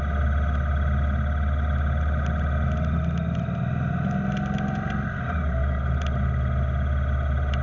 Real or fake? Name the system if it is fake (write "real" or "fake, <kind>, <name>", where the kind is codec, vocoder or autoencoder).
real